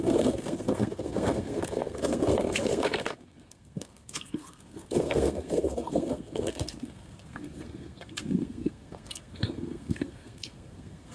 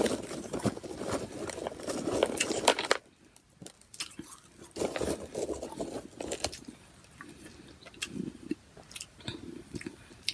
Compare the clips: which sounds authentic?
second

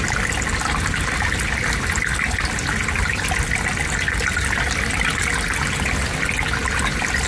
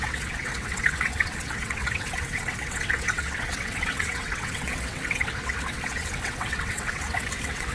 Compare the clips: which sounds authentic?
first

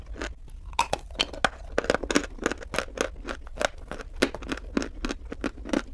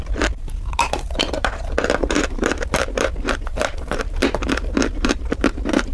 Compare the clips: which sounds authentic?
first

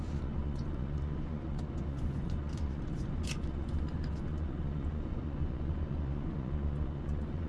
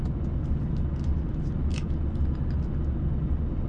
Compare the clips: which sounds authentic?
second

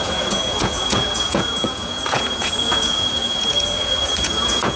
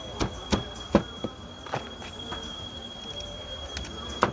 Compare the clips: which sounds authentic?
second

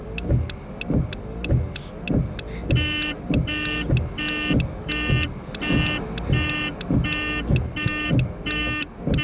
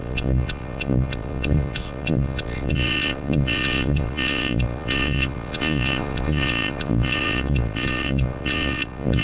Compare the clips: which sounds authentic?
first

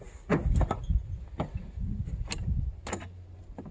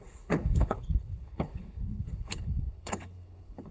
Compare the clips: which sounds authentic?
first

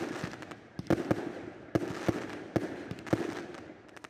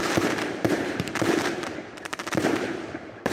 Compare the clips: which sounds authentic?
first